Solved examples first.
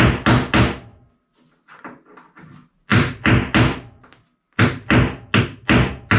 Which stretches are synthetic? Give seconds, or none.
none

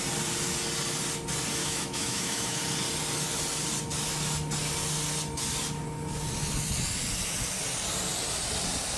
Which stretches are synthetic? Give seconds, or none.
1.6-2.6 (autoencoder, DAC-VAE)

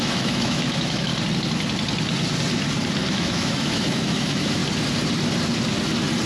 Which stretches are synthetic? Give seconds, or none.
0.0-1.1 (autoencoder, DAC-VAE); 3.1-4.6

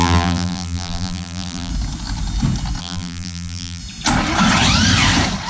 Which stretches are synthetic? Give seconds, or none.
0.0-1.7 (vocoder, BigVGAN v2); 2.8-3.8

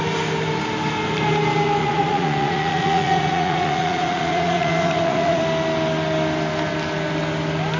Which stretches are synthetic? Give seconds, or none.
1.8-5.4 (vocoder, Vocos)

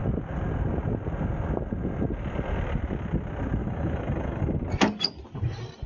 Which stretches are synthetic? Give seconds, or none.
3.6-4.4 (autoencoder, DAC-VAE)

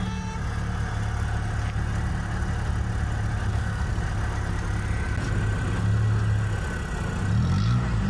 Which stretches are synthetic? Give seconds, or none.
3.5-4.0 (codec, SNAC)